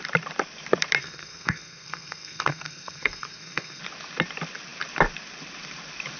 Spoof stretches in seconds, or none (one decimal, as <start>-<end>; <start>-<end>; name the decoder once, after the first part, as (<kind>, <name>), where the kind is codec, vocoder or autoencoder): 1.0-3.8 (codec, SNAC)